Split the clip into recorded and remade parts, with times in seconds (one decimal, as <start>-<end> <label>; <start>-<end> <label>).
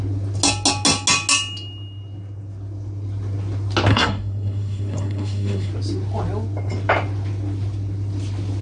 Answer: 0.0-3.9 recorded; 3.9-5.7 remade; 5.7-8.6 recorded